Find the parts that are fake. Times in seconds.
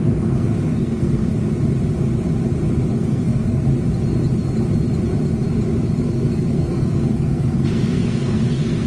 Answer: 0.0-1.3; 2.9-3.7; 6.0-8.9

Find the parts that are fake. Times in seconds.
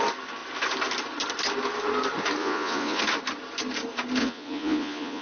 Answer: 2.4-3.0; 4.2-5.2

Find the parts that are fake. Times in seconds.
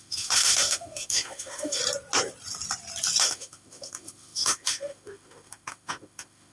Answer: 0.0-1.8; 3.2-6.5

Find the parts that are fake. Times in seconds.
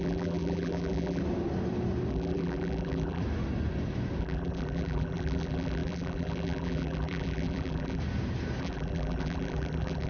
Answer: 0.0-1.2; 2.1-3.2; 4.2-8.0; 8.6-10.1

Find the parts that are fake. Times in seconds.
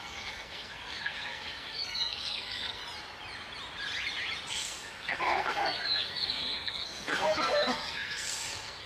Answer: 0.0-2.8; 4.5-8.9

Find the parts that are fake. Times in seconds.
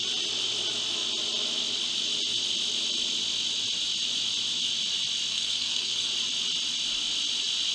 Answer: 5.3-6.1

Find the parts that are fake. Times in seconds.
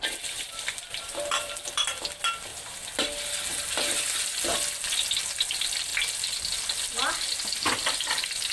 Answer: 0.0-2.5; 5.4-5.9; 7.5-8.5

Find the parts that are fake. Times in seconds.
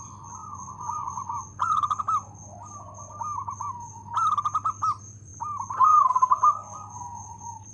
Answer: 0.4-2.0